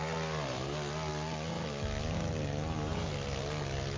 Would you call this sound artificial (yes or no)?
no